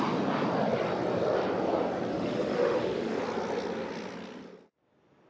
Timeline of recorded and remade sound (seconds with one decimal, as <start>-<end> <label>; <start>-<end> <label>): 0.0-2.1 recorded; 2.1-3.2 remade; 3.2-5.3 recorded